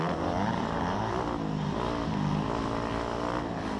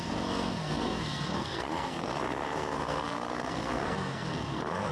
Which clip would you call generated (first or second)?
second